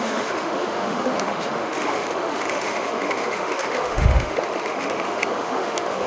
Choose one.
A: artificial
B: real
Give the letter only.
A